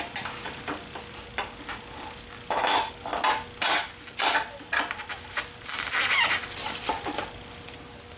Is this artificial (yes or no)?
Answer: no